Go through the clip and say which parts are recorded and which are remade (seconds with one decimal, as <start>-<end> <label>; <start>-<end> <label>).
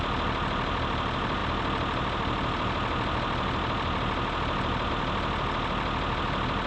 0.0-6.7 recorded